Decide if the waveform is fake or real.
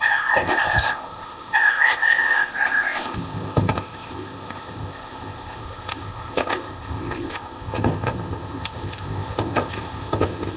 fake